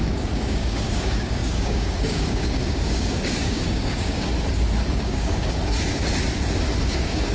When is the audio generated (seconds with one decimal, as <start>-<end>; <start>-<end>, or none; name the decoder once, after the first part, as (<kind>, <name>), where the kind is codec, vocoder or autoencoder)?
0.0-4.3 (codec, DAC); 4.9-5.6; 6.8-7.3